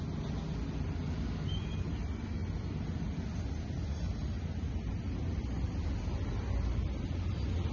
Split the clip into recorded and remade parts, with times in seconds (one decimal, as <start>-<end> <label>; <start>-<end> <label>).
0.0-7.7 recorded